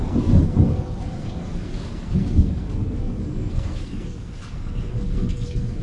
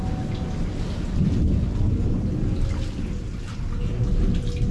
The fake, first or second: first